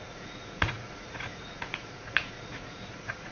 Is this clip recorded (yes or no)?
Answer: no